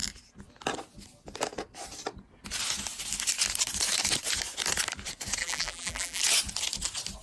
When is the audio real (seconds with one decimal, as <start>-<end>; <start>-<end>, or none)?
0.0-5.4; 6.2-7.2